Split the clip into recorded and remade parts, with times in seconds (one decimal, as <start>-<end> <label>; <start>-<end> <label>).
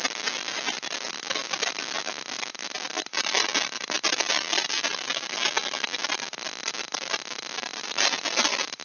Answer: 0.0-8.8 recorded